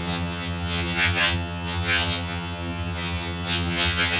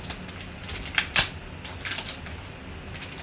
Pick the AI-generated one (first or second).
first